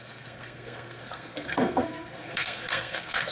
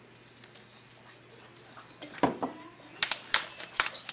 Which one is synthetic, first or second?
first